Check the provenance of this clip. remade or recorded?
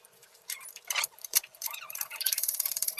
remade